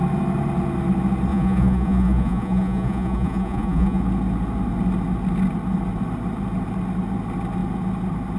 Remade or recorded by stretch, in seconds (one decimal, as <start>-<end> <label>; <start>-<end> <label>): 0.0-1.3 recorded; 1.3-4.0 remade; 4.0-8.4 recorded